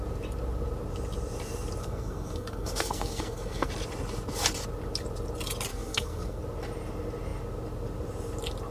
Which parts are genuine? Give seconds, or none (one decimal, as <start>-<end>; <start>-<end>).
0.0-1.8; 3.7-5.7; 6.4-8.7